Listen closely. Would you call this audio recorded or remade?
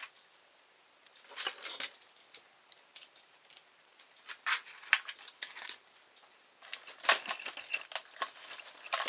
recorded